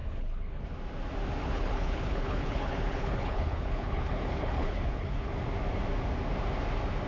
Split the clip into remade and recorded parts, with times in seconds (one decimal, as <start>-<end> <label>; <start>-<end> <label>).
0.0-0.6 remade; 0.6-1.4 recorded; 1.4-5.3 remade; 5.3-7.1 recorded